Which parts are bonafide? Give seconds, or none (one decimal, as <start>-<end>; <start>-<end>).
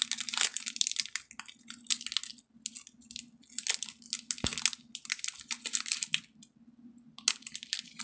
0.0-8.0